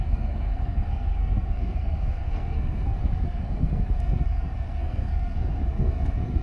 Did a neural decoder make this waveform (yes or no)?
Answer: yes